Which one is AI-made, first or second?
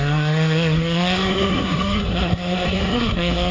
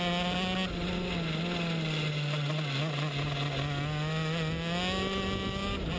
first